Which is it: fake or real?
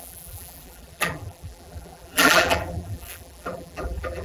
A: fake